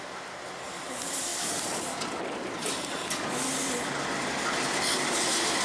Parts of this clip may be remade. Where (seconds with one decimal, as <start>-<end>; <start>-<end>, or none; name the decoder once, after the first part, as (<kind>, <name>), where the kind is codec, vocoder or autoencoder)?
none